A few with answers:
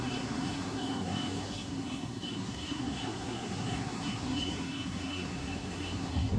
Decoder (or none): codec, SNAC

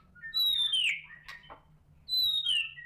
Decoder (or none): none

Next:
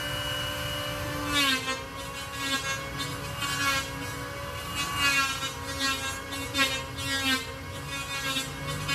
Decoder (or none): none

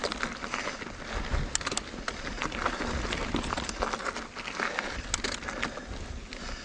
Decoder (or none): none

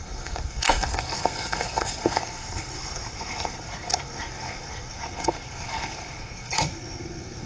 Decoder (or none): codec, SNAC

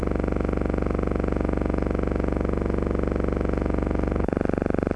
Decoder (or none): none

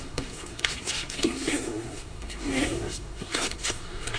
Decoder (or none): codec, SNAC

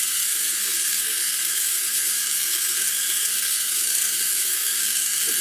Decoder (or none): codec, SNAC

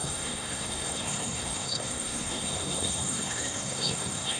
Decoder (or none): codec, SNAC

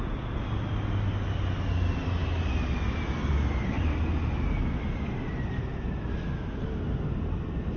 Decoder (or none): none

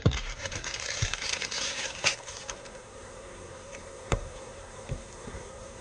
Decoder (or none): codec, SNAC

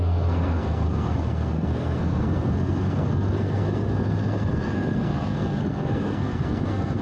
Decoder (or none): codec, SNAC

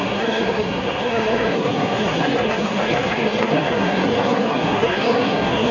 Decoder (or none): codec, SNAC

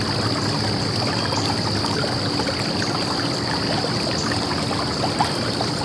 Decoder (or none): none